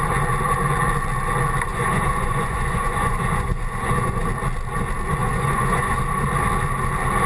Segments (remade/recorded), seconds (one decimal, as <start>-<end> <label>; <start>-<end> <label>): 0.0-1.7 recorded; 1.7-4.2 remade; 4.2-5.2 recorded; 5.2-6.0 remade; 6.0-7.3 recorded